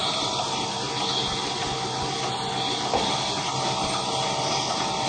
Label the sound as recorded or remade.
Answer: recorded